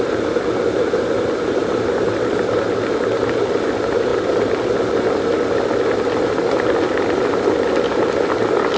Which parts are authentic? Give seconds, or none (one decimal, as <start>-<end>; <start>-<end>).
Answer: 0.0-8.8